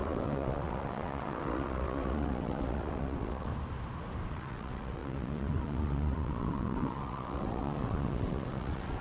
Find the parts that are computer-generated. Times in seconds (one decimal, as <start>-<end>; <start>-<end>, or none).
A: 0.0-3.5; 4.3-9.0